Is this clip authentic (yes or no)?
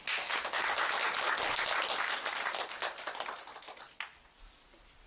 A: yes